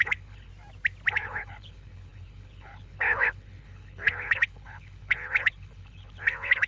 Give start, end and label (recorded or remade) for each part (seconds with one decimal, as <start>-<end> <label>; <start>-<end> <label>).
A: 0.0-0.5 remade; 0.5-1.1 recorded; 1.1-6.7 remade